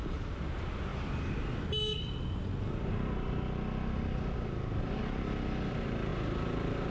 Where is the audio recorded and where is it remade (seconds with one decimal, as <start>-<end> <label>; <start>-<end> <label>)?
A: 0.0-6.9 recorded